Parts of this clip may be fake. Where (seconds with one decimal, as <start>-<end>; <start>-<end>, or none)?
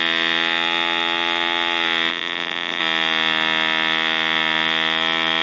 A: 2.1-2.8